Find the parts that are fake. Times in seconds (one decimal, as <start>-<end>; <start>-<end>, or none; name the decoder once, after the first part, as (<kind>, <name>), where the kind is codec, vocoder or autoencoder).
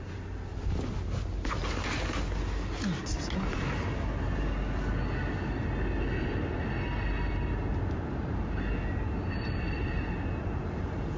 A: none